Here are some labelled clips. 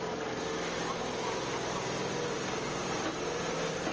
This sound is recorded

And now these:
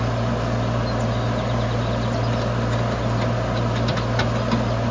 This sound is recorded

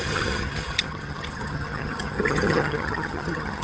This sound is remade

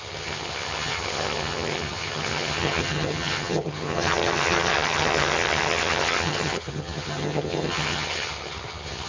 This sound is remade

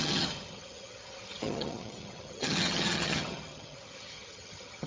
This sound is remade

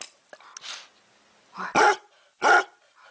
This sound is recorded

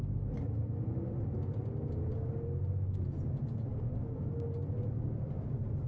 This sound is recorded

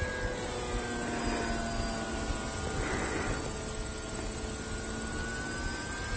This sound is recorded